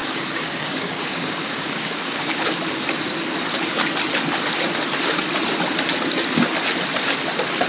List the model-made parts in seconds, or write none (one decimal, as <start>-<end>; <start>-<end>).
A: 0.0-2.4

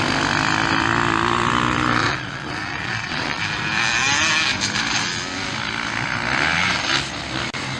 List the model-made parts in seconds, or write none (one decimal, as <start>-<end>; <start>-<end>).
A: 2.0-3.4